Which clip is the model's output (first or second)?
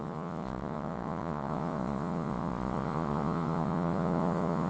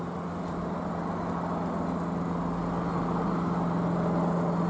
first